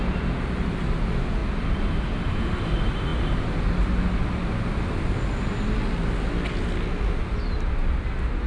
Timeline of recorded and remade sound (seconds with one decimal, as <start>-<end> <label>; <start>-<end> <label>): 0.0-8.5 recorded